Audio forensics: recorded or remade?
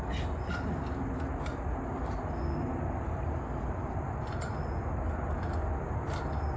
recorded